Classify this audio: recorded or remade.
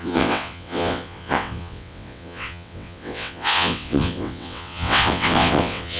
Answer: remade